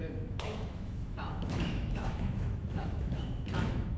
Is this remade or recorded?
remade